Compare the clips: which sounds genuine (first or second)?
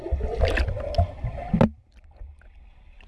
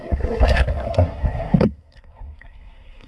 first